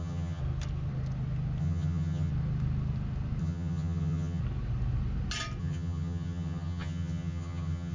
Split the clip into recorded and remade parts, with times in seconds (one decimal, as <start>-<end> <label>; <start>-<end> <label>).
0.0-0.4 remade; 0.4-1.6 recorded; 1.6-2.3 remade; 2.3-3.4 recorded; 3.4-4.4 remade; 4.4-5.6 recorded; 5.6-7.9 remade